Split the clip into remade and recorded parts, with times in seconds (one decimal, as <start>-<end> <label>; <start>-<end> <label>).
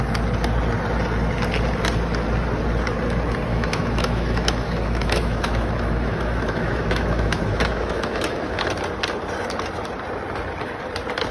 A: 0.0-3.5 recorded; 3.5-8.6 remade; 8.6-11.3 recorded